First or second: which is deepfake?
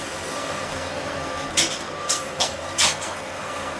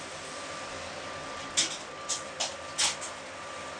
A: first